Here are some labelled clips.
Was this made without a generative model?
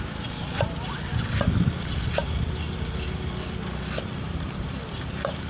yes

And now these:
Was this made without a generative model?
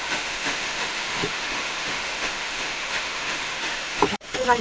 no